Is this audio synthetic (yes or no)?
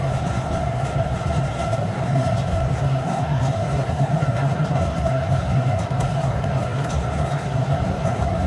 yes